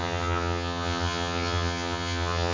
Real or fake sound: fake